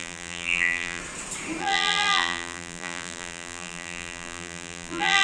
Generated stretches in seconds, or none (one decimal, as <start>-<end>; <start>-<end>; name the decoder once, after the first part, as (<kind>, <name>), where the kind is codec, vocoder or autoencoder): 0.0-1.0 (vocoder, BigVGAN v2); 1.6-5.2

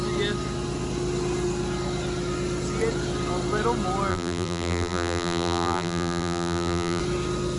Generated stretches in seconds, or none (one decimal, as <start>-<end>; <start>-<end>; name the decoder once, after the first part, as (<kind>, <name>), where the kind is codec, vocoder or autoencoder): 4.1-7.0 (vocoder, BigVGAN v2)

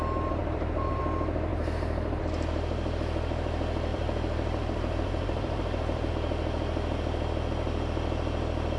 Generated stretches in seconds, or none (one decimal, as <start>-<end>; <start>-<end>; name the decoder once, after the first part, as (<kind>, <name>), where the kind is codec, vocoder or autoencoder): 0.4-1.0 (vocoder, BigVGAN v2); 1.5-2.2; 3.9-6.1